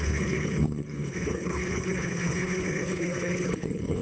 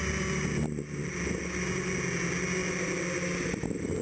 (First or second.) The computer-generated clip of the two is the first